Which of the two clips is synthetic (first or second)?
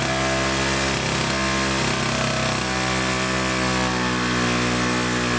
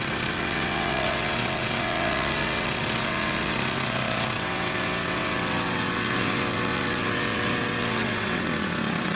second